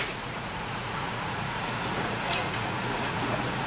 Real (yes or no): no